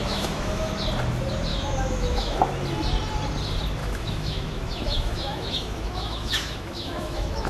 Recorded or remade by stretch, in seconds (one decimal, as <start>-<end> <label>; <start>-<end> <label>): 0.0-0.7 remade; 0.7-1.5 recorded; 1.5-2.4 remade; 2.4-3.8 recorded; 3.8-7.5 remade